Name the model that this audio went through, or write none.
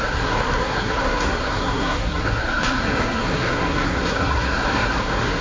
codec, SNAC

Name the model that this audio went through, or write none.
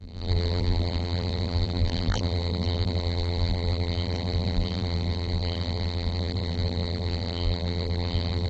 vocoder, BigVGAN v2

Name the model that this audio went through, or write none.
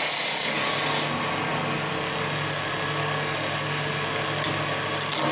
none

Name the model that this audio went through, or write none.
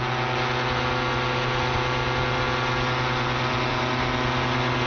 none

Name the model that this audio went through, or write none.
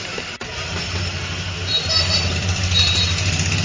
none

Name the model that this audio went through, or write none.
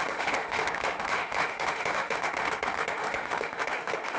autoencoder, DAC-VAE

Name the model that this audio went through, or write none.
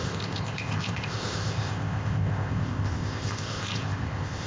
codec, ZipCodec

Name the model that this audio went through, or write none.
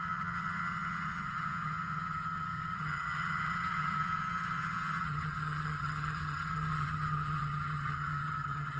vocoder, HiFi-GAN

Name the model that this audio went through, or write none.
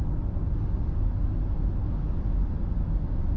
none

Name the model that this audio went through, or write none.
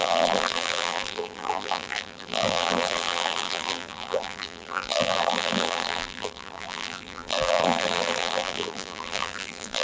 vocoder, BigVGAN v2